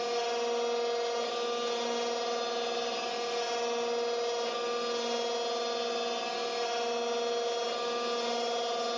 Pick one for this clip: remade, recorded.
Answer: recorded